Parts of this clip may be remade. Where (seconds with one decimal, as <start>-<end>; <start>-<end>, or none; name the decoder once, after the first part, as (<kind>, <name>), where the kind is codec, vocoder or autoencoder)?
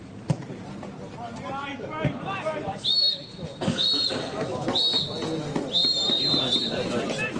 0.5-1.1 (vocoder, BigVGAN v2); 5.8-6.4